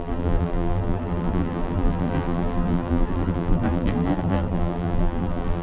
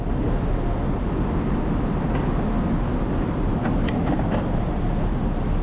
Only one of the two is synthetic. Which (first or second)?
first